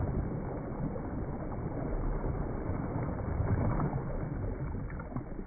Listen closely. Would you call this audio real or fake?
real